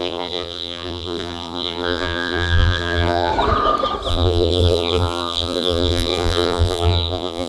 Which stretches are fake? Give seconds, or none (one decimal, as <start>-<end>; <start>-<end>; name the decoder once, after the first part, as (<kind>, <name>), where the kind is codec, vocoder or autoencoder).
0.0-3.3 (vocoder, BigVGAN v2); 4.1-7.5